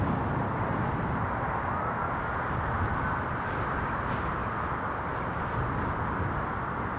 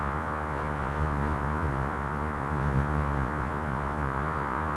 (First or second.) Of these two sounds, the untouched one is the first